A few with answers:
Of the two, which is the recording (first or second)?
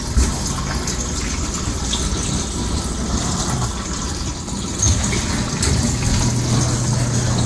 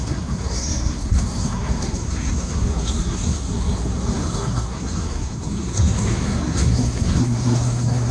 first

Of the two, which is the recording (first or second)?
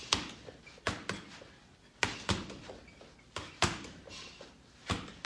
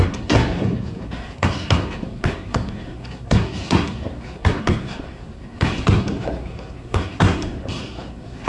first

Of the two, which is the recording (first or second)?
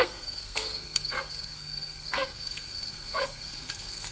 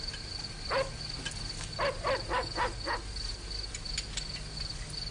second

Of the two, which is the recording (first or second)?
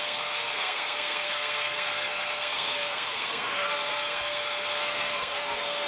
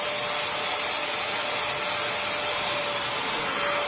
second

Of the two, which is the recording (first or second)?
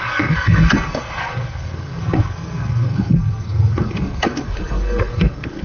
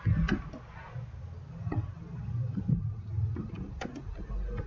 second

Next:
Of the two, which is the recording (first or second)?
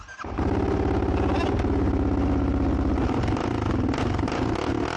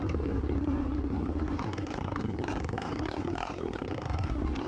first